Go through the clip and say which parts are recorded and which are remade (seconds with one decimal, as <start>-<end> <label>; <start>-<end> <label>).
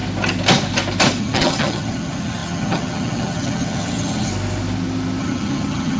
0.0-1.2 recorded; 1.2-4.3 remade; 4.3-5.2 recorded; 5.2-6.0 remade